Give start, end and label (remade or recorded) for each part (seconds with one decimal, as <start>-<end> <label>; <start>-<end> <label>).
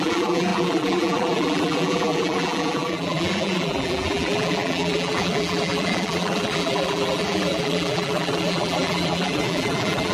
0.0-10.1 remade